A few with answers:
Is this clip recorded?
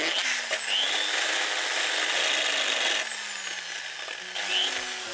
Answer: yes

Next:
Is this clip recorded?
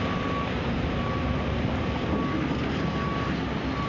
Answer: yes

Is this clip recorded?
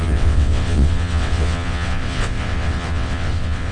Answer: no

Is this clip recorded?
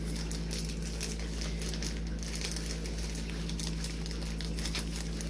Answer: yes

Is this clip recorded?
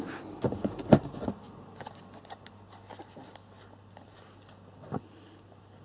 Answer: yes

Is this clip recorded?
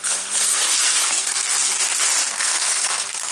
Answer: no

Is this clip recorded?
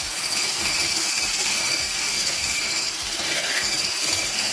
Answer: no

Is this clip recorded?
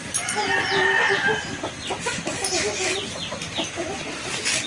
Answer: yes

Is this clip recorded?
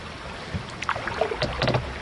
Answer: yes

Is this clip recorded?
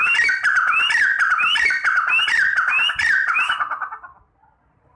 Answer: no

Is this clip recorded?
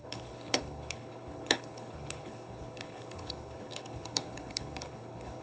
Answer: no